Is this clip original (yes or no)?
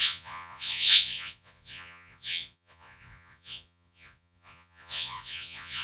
no